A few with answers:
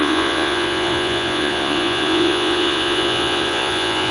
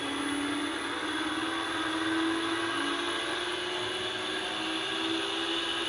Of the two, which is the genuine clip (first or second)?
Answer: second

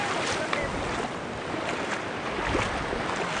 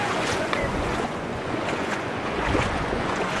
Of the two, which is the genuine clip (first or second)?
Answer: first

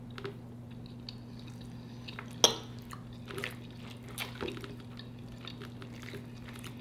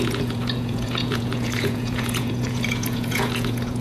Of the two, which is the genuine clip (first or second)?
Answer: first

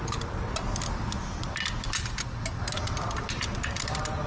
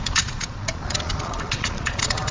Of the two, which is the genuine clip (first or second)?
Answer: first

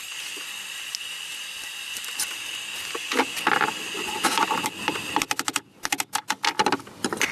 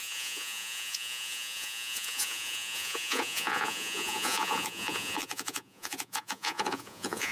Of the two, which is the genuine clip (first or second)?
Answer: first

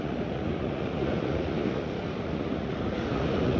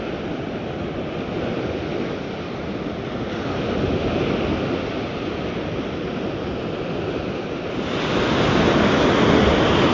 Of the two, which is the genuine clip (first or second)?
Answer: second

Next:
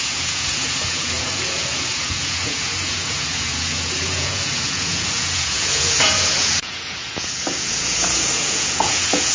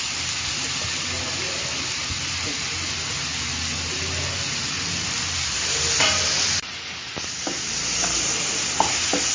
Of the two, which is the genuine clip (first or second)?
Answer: second